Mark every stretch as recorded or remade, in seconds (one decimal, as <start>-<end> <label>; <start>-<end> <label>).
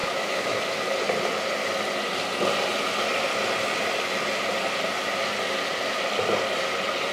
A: 0.0-0.6 remade; 0.6-7.1 recorded